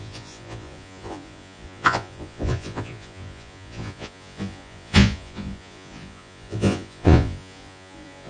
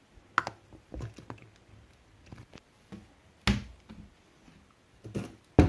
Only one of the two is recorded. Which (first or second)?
second